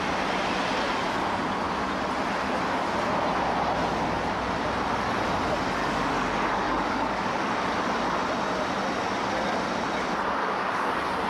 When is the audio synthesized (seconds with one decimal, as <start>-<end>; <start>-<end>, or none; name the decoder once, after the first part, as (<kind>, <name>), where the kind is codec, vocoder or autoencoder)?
5.8-7.5 (codec, DAC); 10.4-10.9